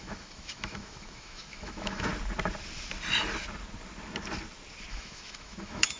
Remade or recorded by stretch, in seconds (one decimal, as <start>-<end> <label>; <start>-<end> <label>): 0.0-2.1 remade; 2.1-4.9 recorded; 4.9-6.0 remade